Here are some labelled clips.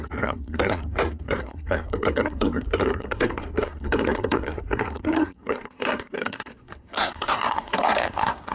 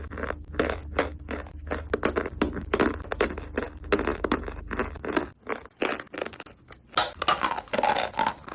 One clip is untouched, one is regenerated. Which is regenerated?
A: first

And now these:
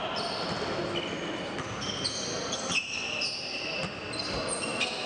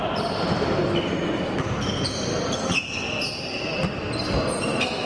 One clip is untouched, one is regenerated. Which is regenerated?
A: second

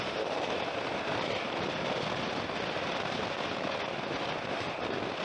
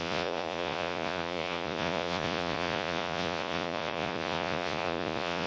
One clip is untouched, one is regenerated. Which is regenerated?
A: second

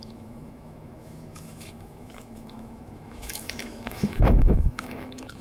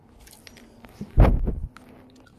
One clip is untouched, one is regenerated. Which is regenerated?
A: first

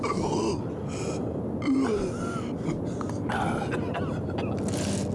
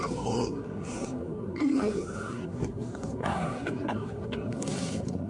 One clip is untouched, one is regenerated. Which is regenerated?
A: second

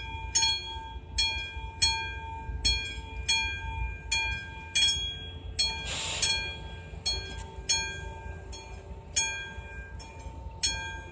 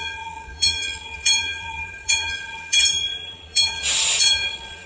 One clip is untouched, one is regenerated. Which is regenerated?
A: second